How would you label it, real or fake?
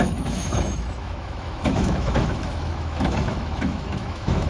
fake